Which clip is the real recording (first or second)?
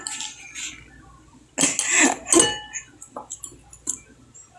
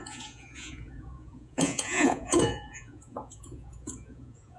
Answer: first